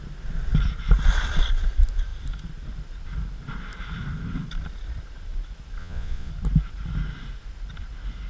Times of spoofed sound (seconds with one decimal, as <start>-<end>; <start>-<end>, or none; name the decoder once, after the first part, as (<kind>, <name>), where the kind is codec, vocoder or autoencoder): 5.8-6.3 (vocoder, Vocos)